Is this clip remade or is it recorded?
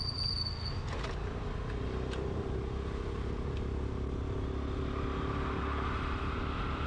recorded